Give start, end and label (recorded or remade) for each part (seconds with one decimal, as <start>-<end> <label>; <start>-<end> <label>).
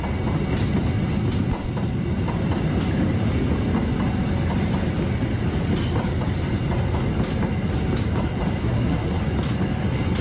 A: 0.0-8.6 recorded; 8.6-9.2 remade; 9.2-10.2 recorded